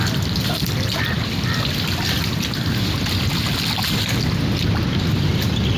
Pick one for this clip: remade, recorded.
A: recorded